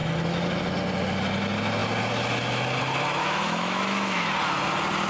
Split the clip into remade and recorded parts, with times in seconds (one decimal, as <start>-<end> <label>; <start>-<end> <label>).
0.0-3.2 recorded; 3.2-4.3 remade; 4.3-5.1 recorded